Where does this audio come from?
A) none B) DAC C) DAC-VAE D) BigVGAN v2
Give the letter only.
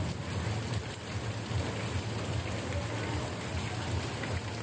A